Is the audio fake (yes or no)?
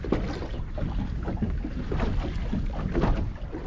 no